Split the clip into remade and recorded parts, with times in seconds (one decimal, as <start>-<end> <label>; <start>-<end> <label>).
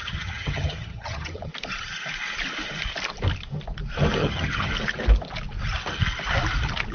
0.0-1.5 remade; 1.5-4.2 recorded; 4.2-4.7 remade; 4.7-6.9 recorded